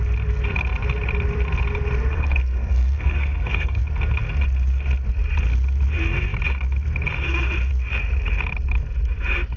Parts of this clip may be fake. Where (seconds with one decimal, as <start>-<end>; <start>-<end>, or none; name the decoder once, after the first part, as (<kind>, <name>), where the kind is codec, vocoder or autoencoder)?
2.1-3.8 (codec, SNAC)